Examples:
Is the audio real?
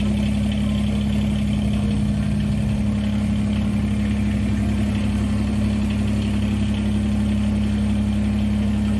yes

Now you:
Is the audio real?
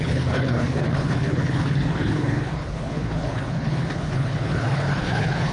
no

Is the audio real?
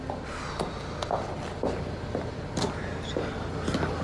yes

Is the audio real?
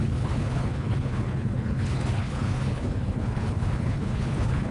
no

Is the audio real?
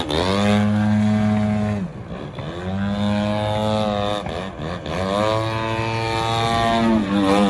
yes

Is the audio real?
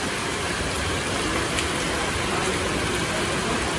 yes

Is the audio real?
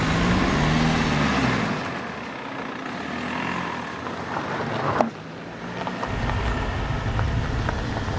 yes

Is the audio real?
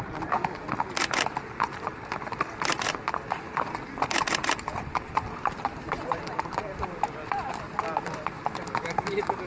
yes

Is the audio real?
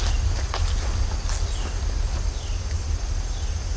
yes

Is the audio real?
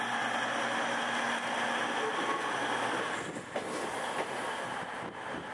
yes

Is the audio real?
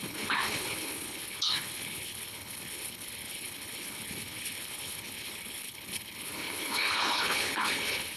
no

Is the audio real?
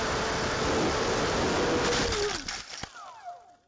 yes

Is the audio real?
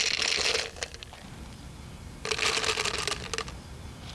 yes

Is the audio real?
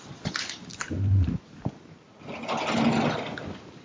yes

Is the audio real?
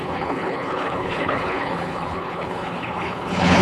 no